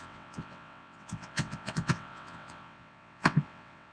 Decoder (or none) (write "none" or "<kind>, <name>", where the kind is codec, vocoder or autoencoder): vocoder, WaveNeXt